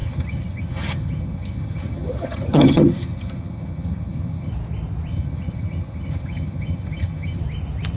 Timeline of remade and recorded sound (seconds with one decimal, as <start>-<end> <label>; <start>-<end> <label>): 0.0-4.5 remade; 4.5-5.1 recorded; 5.1-7.4 remade; 7.4-8.0 recorded